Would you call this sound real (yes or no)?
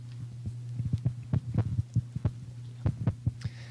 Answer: yes